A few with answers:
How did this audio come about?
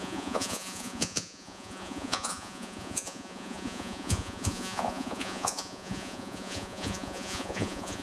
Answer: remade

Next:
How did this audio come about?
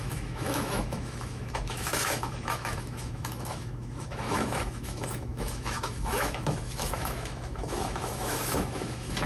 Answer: remade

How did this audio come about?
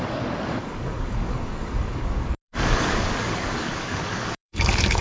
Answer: remade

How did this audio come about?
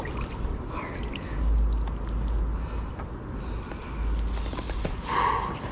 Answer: recorded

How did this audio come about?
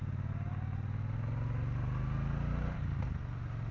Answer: recorded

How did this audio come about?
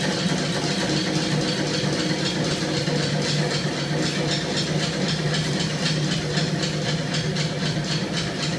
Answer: recorded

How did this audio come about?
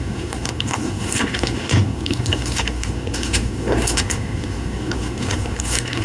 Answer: remade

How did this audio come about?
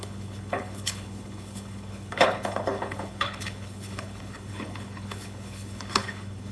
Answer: remade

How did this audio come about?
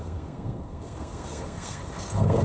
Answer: remade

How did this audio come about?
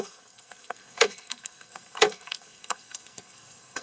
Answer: remade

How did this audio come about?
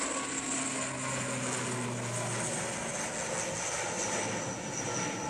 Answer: recorded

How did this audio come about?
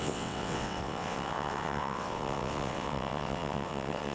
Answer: remade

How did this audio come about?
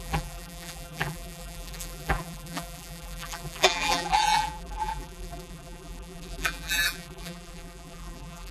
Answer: remade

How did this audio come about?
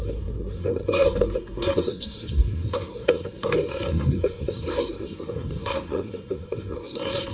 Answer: remade